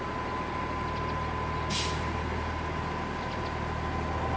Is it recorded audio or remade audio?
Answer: recorded